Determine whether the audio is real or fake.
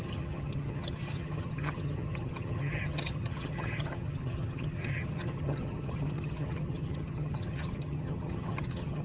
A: fake